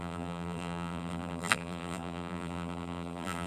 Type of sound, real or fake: fake